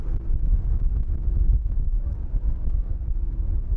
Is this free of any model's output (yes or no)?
yes